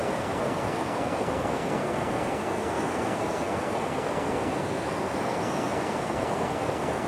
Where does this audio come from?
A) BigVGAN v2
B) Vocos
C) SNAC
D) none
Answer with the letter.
C